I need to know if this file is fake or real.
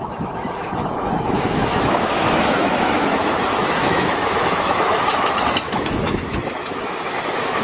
fake